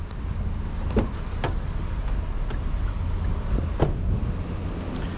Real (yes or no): yes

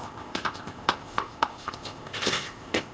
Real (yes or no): no